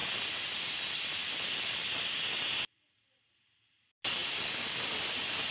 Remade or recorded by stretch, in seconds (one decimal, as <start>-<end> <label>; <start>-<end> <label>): 0.0-5.5 recorded